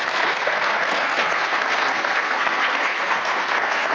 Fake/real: fake